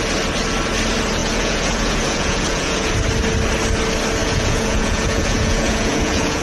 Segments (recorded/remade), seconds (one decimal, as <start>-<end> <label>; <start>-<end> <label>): 0.0-1.2 recorded; 1.2-2.9 remade; 2.9-4.2 recorded; 4.2-6.4 remade